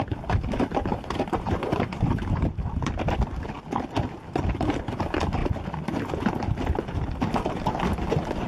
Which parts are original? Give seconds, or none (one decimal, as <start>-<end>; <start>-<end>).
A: 0.0-0.9; 2.6-5.4; 6.0-8.5

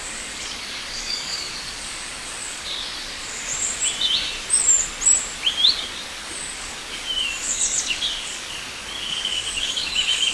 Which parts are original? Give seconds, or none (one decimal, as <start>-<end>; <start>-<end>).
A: 3.5-5.8

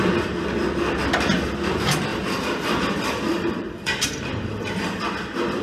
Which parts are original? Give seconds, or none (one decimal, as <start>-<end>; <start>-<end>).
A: 0.0-2.1; 5.0-5.6